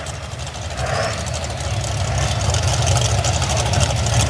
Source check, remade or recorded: recorded